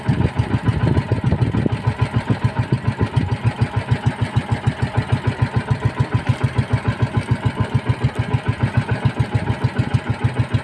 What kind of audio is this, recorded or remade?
recorded